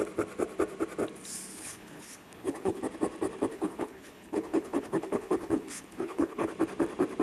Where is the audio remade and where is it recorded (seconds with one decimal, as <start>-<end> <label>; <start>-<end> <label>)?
0.0-1.5 recorded; 1.5-2.8 remade; 2.8-3.5 recorded; 3.5-6.5 remade; 6.5-7.2 recorded